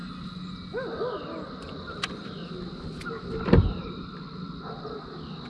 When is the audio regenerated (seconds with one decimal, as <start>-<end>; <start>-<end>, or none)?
none